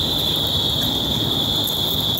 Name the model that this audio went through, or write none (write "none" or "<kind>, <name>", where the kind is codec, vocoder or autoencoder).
none